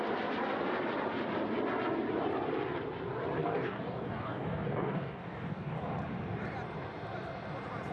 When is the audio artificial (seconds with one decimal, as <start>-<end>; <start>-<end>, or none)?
3.4-5.8